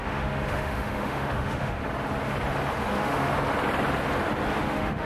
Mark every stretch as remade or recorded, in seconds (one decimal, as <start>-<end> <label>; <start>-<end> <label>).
0.0-1.8 remade; 1.8-2.9 recorded; 2.9-3.3 remade; 3.3-4.6 recorded; 4.6-5.1 remade